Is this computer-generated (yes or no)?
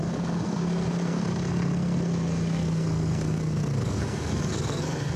yes